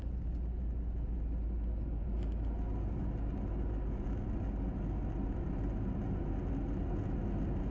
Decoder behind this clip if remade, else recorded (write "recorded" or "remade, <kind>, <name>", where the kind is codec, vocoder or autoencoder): recorded